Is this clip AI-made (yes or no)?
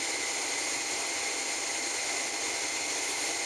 no